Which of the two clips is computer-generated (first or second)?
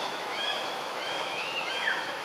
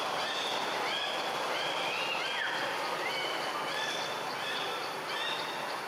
first